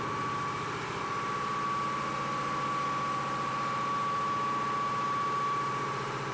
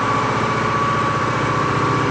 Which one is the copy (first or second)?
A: second